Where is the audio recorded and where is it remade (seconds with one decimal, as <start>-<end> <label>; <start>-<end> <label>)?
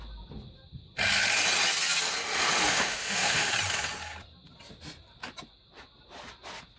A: 0.0-2.7 recorded; 2.7-3.5 remade; 3.5-6.8 recorded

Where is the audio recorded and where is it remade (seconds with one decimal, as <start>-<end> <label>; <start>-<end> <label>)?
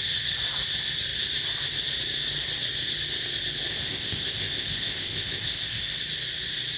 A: 0.0-3.7 recorded; 3.7-6.0 remade; 6.0-6.8 recorded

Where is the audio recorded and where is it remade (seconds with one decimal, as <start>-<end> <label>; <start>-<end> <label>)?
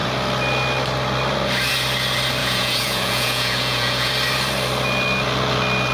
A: 0.0-2.4 recorded; 2.4-4.1 remade; 4.1-5.9 recorded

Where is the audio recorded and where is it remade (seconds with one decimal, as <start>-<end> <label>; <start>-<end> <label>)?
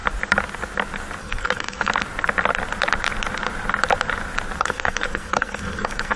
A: 0.0-1.2 recorded; 1.2-1.9 remade; 1.9-4.6 recorded; 4.6-6.2 remade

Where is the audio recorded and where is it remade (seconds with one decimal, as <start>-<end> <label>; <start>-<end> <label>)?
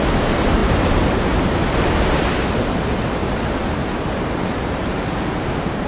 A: 0.0-0.6 recorded; 0.6-2.4 remade; 2.4-3.2 recorded; 3.2-5.9 remade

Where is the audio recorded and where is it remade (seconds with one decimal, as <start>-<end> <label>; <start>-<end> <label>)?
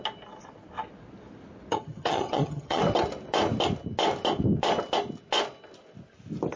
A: 0.0-1.7 recorded; 1.7-2.8 remade; 2.8-6.6 recorded